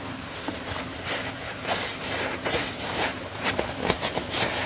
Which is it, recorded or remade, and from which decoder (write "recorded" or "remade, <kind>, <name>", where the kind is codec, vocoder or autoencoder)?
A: remade, vocoder, BigVGAN v2